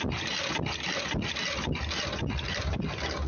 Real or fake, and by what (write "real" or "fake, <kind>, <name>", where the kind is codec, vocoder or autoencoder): real